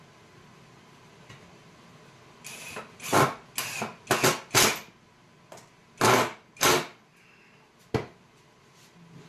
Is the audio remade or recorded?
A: recorded